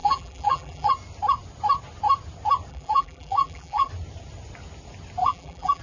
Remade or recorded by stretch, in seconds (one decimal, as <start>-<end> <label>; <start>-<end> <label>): 0.0-0.9 remade; 0.9-2.7 recorded; 2.7-3.9 remade; 3.9-5.2 recorded; 5.2-5.8 remade